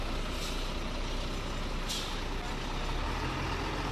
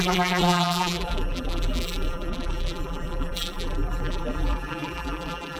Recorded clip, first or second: first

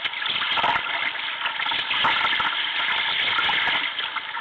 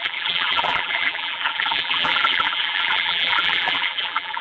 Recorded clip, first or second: first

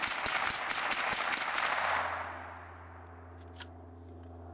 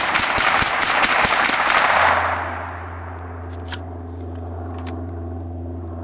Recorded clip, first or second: first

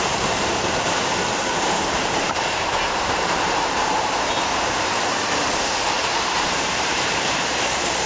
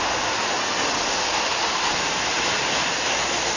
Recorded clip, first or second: second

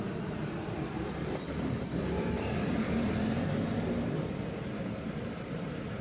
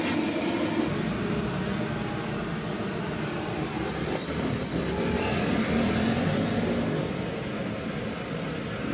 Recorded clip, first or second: second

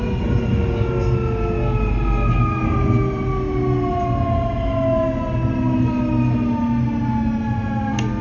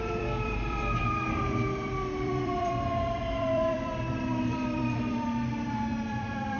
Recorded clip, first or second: first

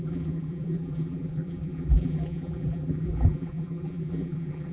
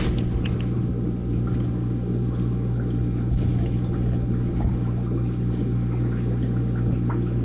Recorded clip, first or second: second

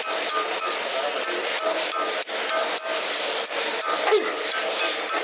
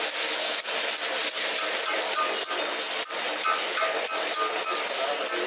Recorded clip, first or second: second